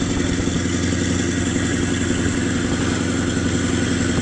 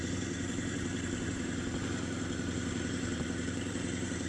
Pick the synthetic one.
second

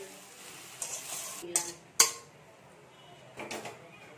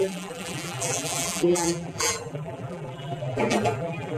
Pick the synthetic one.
second